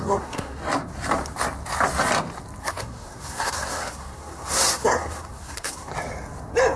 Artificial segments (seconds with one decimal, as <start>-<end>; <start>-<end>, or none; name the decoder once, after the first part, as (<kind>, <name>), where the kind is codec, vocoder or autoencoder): 0.0-0.6 (codec, SNAC); 2.6-5.9